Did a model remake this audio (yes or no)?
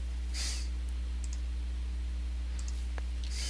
no